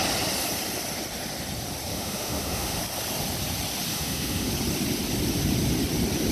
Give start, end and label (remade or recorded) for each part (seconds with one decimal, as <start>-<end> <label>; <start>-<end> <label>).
0.0-1.9 recorded; 1.9-2.8 remade; 2.8-3.9 recorded; 3.9-4.5 remade; 4.5-6.3 recorded